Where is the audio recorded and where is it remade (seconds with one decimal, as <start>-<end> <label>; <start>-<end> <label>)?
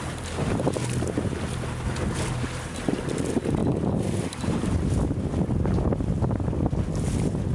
0.0-3.6 recorded; 3.6-5.3 remade; 5.3-7.5 recorded